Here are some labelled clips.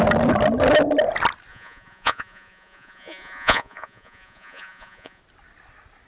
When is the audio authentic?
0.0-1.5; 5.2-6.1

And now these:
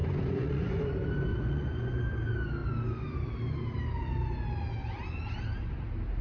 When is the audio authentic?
0.9-1.3; 2.0-6.2

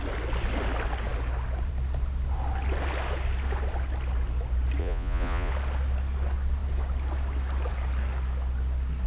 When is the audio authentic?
0.0-4.8; 5.5-9.1

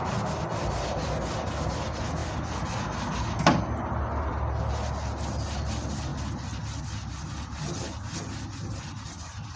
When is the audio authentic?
0.0-9.6

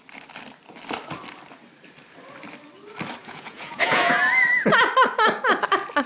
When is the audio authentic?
0.0-3.2; 4.2-6.1

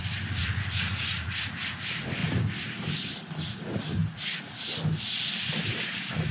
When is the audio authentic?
0.0-0.4; 1.7-6.3

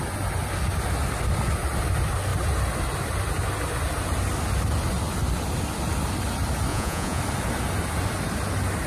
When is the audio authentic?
0.0-6.7; 7.2-8.9

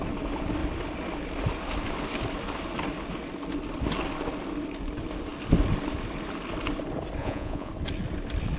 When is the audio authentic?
0.0-7.2; 7.7-8.6